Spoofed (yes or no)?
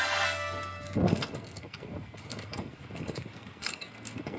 yes